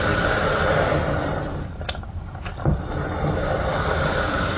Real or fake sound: real